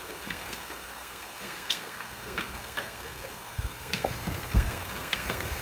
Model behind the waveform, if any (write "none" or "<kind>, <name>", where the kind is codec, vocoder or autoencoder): codec, SNAC